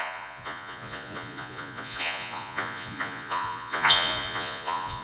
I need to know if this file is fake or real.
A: fake